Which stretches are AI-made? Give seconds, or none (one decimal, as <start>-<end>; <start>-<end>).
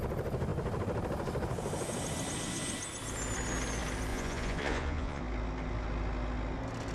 4.1-5.2